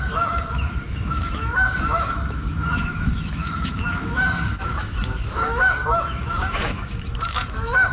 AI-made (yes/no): yes